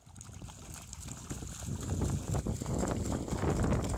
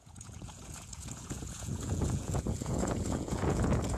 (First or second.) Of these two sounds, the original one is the first